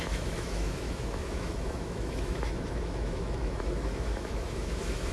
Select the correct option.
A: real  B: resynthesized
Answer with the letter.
B